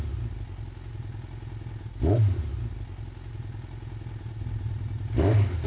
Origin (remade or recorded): recorded